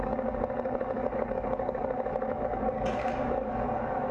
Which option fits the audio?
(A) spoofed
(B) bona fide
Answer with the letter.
A